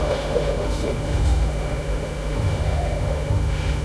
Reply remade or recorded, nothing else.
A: remade